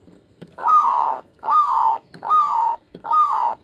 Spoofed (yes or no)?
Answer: yes